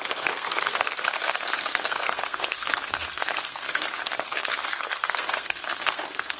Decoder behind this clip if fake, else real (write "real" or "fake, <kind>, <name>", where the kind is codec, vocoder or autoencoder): fake, codec, SNAC